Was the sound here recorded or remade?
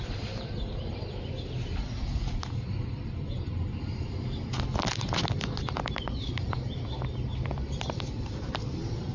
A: recorded